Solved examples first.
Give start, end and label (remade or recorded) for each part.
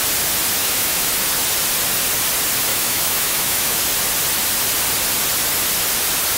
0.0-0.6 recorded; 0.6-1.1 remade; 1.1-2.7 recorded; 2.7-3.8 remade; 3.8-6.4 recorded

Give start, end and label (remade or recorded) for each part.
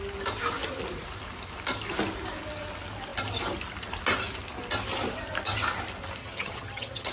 0.0-6.2 recorded; 6.2-7.1 remade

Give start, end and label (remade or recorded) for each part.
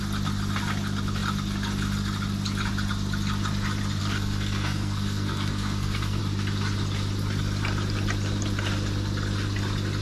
0.0-4.0 recorded; 4.0-6.2 remade; 6.2-10.0 recorded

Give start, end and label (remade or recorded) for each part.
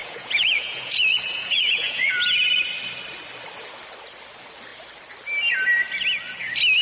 0.0-2.1 remade; 2.1-6.8 recorded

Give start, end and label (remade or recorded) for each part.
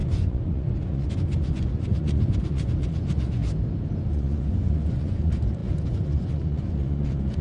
0.0-3.4 remade; 3.4-4.1 recorded; 4.1-7.4 remade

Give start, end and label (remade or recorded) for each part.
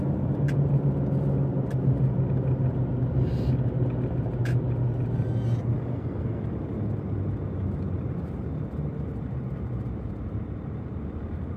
0.0-5.9 recorded; 5.9-6.4 remade; 6.4-11.6 recorded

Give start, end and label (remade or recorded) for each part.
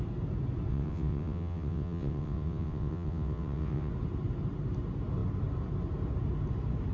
0.0-0.7 recorded; 0.7-3.9 remade; 3.9-6.9 recorded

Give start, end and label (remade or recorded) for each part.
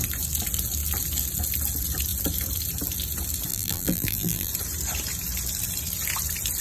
0.0-3.5 recorded; 3.5-4.5 remade; 4.5-6.6 recorded